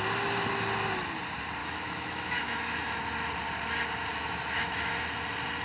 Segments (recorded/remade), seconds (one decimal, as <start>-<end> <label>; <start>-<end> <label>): 0.0-1.6 recorded; 1.6-3.0 remade; 3.0-4.1 recorded; 4.1-4.9 remade; 4.9-5.6 recorded